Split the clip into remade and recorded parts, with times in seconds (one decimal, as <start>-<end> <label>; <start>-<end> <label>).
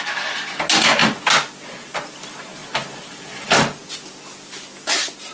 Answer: 0.0-5.3 recorded